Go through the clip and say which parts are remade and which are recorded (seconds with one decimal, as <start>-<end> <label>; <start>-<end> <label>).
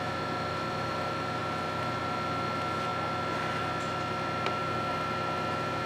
0.0-5.9 recorded